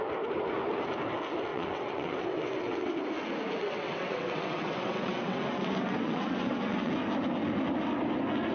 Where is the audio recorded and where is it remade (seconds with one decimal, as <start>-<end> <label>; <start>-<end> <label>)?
0.0-1.5 recorded; 1.5-3.0 remade; 3.0-3.6 recorded; 3.6-6.9 remade; 6.9-8.5 recorded